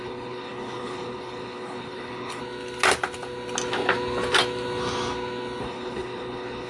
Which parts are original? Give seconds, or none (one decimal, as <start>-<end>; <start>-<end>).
2.4-5.6

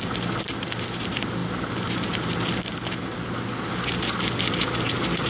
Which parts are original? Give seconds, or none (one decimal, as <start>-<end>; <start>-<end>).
0.0-5.3

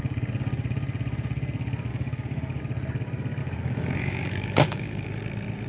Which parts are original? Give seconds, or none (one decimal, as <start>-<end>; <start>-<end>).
0.0-1.9; 2.6-3.4; 5.2-5.7

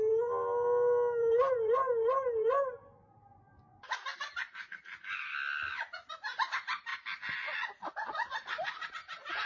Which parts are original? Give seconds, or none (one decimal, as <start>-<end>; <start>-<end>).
0.0-9.5

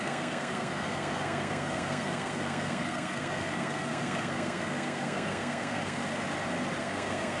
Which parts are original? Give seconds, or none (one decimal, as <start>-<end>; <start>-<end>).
6.0-6.8